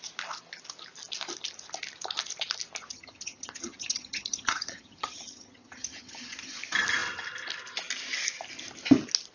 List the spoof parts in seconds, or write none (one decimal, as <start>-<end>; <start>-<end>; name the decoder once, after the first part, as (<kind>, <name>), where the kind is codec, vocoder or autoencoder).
2.9-6.6 (vocoder, HiFi-GAN)